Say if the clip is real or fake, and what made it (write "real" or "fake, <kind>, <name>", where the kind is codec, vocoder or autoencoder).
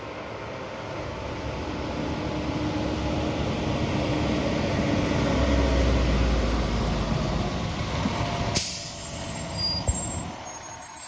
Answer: real